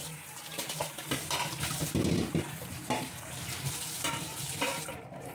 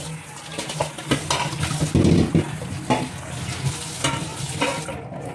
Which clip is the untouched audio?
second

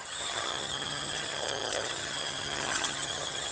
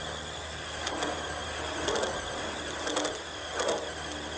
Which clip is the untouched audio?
second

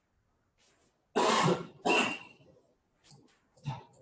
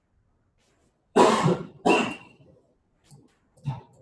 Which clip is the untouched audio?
first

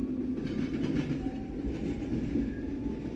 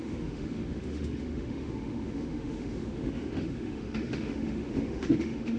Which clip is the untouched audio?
first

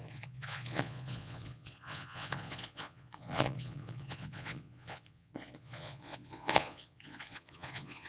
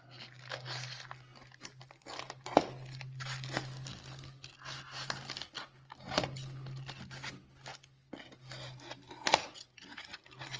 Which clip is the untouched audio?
second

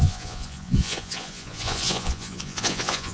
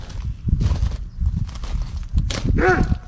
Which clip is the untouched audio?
second